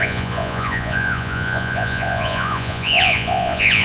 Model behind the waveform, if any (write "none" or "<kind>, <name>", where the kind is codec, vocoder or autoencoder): vocoder, Vocos